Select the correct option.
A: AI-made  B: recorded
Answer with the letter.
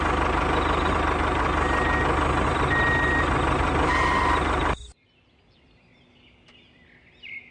B